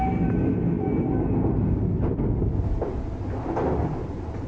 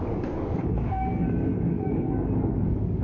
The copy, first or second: second